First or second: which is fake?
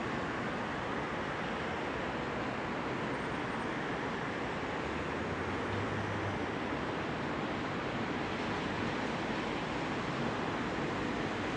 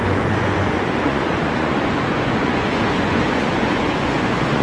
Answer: second